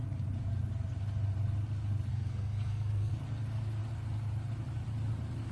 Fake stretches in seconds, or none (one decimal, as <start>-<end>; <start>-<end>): 2.1-3.1